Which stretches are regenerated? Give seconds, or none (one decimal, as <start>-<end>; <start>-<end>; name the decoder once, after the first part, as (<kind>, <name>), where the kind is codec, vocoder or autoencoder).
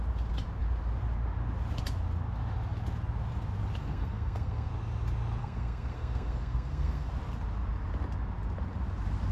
3.8-4.7 (codec, SNAC); 5.4-7.1